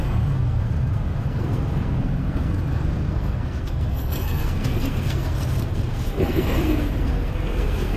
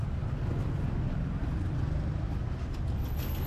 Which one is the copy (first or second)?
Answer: first